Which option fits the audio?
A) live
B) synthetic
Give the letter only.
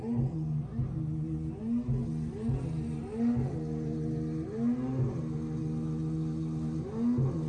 A